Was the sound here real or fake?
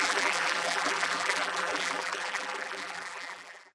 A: fake